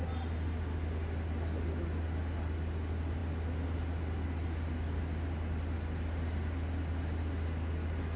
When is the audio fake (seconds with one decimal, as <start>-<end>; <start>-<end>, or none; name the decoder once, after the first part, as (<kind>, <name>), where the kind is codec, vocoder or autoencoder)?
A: none